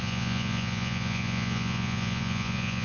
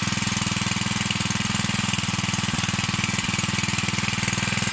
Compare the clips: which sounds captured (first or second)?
second